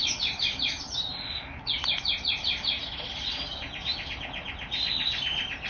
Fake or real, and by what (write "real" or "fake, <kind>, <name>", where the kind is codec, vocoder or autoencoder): real